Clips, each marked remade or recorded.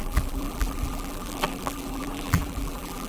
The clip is remade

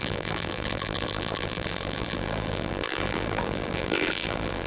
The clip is remade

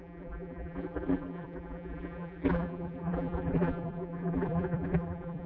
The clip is remade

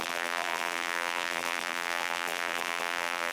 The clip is remade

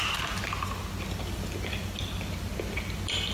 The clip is remade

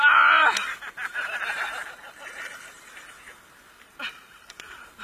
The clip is remade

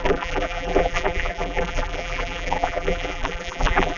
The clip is remade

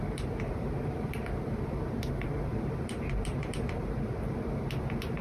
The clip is remade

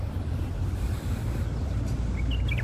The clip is recorded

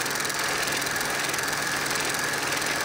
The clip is recorded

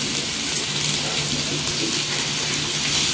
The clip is recorded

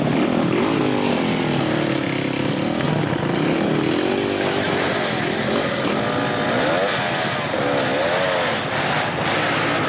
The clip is recorded